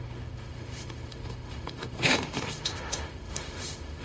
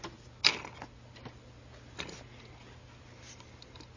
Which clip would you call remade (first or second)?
first